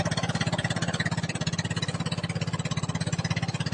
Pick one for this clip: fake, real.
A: real